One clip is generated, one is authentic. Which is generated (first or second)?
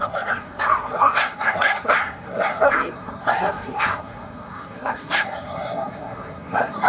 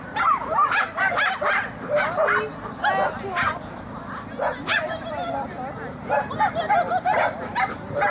first